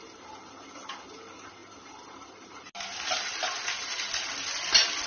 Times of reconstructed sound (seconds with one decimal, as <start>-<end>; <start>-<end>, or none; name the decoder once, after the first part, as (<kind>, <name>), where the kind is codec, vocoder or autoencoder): none